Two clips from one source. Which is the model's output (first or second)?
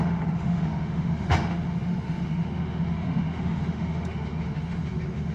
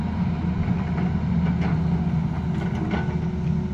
first